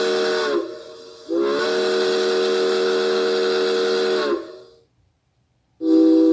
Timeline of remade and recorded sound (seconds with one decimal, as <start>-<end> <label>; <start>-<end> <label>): 0.0-6.3 recorded